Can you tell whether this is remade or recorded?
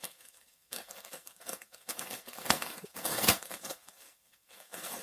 remade